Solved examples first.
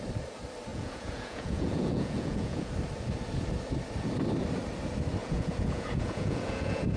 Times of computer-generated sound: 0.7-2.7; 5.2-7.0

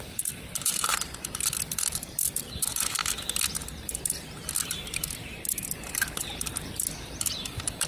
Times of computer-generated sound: 0.0-3.0; 3.6-7.9

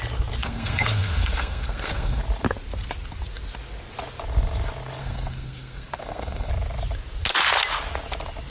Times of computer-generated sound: 0.4-2.2; 5.0-6.5

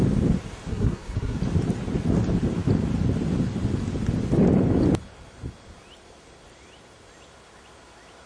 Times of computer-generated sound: 0.7-1.4

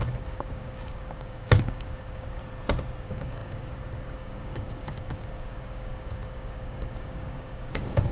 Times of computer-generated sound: 0.0-2.4; 3.0-8.1